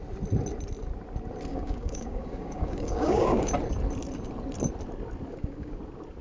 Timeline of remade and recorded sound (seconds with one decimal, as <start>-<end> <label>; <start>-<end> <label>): 0.0-1.5 recorded; 1.5-3.5 remade; 3.5-5.3 recorded; 5.3-5.8 remade; 5.8-6.2 recorded